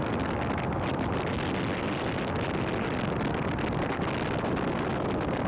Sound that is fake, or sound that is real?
real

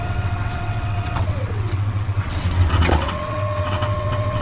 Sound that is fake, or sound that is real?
fake